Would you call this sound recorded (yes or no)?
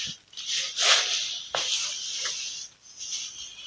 no